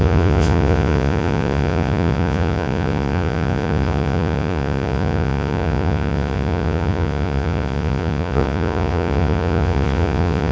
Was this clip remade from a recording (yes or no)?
yes